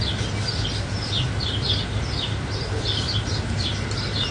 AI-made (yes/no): no